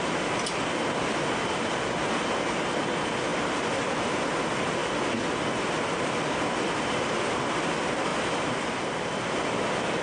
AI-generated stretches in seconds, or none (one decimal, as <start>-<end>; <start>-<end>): 3.3-4.3; 8.1-9.3